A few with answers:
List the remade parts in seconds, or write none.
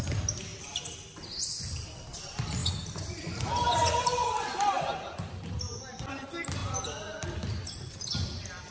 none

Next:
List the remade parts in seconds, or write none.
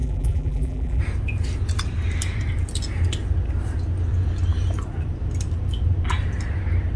0.0-1.0 (vocoder, BigVGAN v2)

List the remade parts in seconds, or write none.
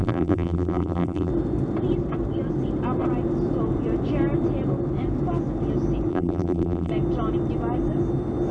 0.0-1.3 (vocoder, BigVGAN v2); 6.1-6.9